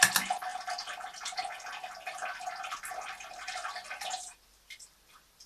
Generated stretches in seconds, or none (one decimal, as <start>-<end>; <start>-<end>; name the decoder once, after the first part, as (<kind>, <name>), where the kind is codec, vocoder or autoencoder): none